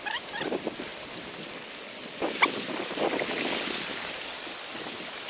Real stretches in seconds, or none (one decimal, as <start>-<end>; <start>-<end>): 0.0-5.3